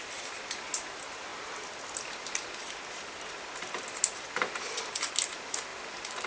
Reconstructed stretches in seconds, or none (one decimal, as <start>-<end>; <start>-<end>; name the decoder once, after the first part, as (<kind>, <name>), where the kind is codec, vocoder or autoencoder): none